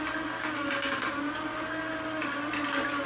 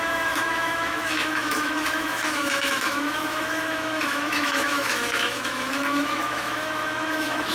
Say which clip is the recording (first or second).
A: first